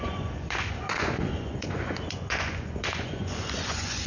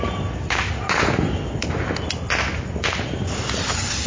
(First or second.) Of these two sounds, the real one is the second